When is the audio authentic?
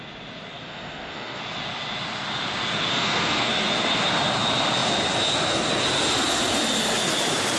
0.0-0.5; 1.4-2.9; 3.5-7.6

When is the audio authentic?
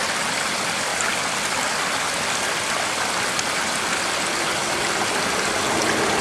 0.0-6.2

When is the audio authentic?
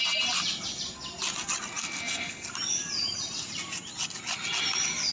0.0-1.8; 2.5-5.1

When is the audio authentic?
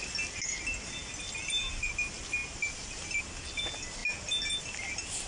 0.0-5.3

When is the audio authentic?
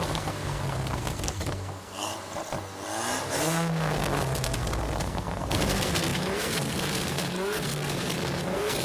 2.1-3.3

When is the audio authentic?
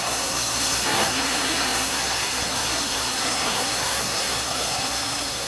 none